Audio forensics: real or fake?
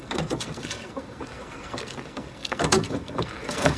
fake